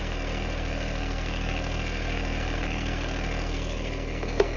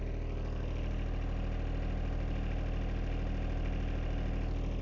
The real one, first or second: second